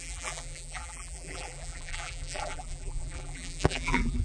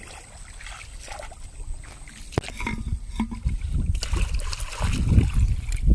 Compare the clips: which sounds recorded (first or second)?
second